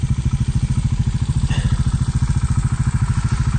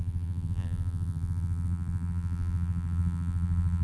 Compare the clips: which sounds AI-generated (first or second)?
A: second